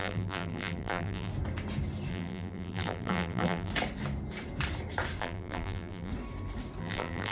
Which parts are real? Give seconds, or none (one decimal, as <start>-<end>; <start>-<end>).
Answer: 1.3-2.1; 3.7-5.2; 6.1-6.8